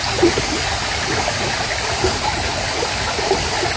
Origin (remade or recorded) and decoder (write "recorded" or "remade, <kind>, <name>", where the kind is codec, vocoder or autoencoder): recorded